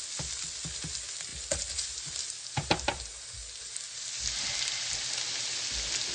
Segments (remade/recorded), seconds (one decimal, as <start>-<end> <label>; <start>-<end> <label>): 0.0-6.1 recorded